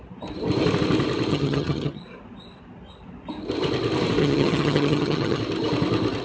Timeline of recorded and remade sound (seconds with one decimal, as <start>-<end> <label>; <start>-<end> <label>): 0.0-1.3 recorded; 1.3-2.0 remade; 2.0-4.2 recorded; 4.2-5.4 remade; 5.4-6.2 recorded